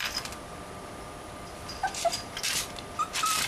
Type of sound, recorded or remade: remade